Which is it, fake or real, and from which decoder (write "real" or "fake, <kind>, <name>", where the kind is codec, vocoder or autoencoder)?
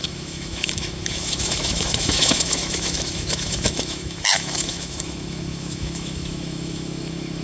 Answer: fake, autoencoder, DAC-VAE